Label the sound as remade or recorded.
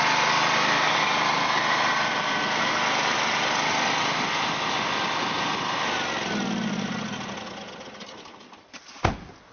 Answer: recorded